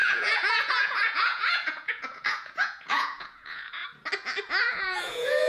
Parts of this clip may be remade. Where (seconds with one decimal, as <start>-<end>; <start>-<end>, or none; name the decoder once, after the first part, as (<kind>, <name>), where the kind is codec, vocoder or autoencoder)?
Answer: 0.0-3.8 (vocoder, Vocos); 4.6-5.5